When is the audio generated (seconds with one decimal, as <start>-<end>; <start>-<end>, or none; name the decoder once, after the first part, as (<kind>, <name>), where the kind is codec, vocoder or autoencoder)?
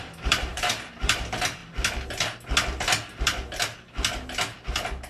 0.0-1.6 (vocoder, BigVGAN v2)